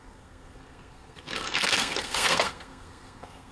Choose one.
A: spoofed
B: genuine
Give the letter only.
A